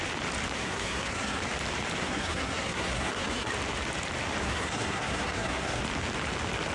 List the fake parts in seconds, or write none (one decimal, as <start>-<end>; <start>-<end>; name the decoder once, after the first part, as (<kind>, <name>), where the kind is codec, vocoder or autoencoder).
0.6-1.4 (codec, SNAC); 2.0-3.5; 4.4-5.8